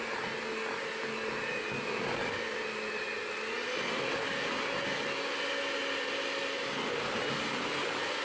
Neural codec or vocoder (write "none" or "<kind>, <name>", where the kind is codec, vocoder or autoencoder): none